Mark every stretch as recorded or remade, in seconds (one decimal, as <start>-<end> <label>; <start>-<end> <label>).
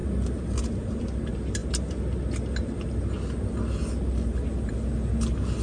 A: 0.0-5.6 recorded